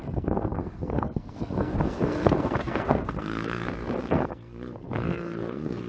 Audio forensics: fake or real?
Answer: fake